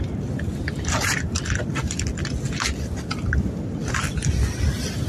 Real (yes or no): yes